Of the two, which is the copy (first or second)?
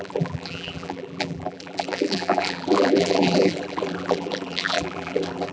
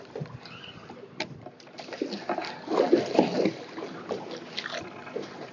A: first